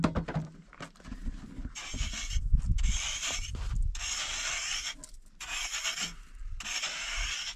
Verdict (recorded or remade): recorded